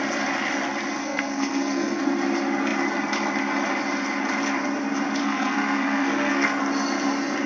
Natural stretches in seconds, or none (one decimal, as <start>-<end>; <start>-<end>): 0.0-1.0; 2.0-5.2; 6.6-7.5